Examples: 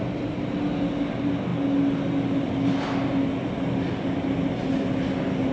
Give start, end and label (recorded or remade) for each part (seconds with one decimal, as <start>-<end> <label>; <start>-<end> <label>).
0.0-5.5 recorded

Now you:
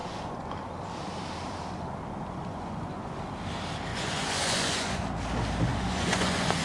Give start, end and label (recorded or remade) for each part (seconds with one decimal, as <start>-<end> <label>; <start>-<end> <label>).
0.0-0.5 remade; 0.5-2.4 recorded; 2.4-3.2 remade; 3.2-3.9 recorded; 3.9-5.0 remade; 5.0-5.7 recorded; 5.7-6.6 remade

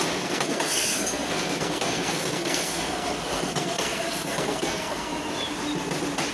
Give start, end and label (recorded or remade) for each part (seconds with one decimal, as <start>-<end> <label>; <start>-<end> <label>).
0.0-5.1 remade; 5.1-6.3 recorded

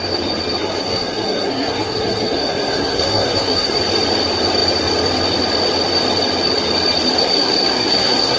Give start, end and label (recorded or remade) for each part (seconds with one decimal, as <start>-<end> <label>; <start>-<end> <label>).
0.0-0.6 recorded; 0.6-3.8 remade; 3.8-7.2 recorded; 7.2-8.4 remade